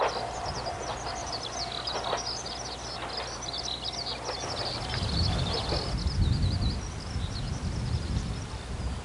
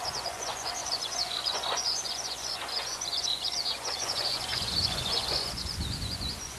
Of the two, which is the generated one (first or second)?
second